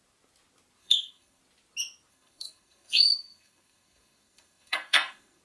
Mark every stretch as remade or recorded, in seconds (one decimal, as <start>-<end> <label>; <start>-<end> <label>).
0.0-0.8 recorded; 0.8-1.4 remade; 1.4-2.1 recorded; 2.1-5.4 remade